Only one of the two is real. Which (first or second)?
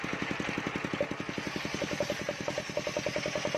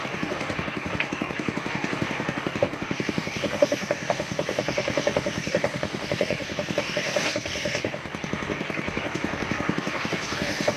first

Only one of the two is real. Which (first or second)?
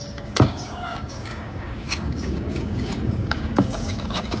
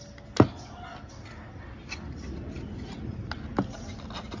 second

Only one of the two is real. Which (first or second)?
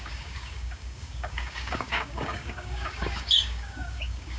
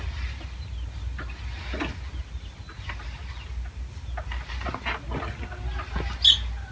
second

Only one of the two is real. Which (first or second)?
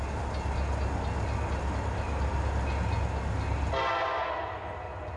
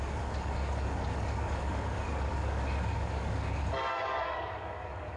first